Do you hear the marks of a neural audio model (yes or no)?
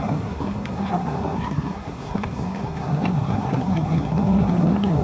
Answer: yes